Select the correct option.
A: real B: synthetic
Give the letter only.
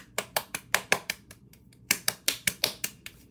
B